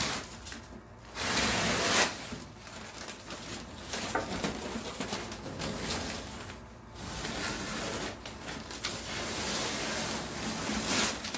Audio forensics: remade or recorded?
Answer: recorded